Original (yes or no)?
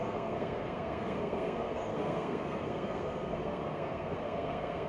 no